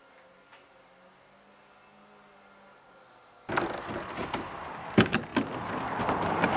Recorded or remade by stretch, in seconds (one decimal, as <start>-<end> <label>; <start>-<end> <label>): 0.0-6.6 recorded